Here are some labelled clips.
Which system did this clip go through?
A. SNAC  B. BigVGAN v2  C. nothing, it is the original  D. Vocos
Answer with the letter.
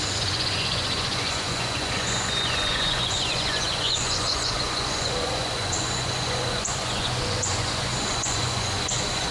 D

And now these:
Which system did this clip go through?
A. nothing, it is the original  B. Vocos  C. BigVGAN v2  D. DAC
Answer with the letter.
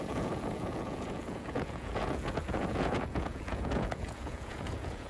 B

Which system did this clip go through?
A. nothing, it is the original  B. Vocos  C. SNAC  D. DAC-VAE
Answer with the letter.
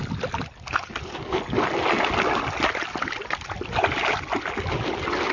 A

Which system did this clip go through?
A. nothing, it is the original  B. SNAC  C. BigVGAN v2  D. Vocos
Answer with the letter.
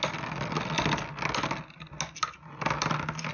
A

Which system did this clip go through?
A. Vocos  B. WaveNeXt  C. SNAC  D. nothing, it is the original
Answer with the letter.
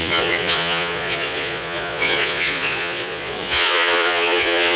A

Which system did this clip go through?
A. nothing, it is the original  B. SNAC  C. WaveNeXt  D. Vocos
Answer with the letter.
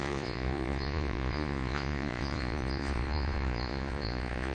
D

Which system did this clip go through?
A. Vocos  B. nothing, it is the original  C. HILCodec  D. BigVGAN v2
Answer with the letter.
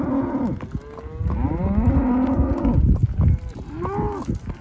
B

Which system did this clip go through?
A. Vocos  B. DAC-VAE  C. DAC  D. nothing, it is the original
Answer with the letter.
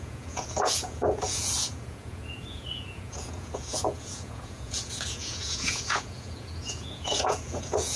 A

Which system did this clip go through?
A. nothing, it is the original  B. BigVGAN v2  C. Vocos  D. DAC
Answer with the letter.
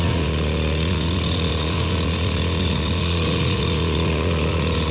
C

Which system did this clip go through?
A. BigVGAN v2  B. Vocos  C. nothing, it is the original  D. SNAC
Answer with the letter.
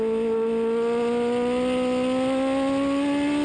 C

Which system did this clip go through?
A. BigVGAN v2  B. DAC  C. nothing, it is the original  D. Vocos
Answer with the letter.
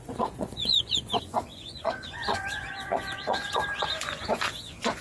D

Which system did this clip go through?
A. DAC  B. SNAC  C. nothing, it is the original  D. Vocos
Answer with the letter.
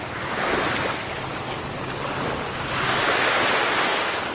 C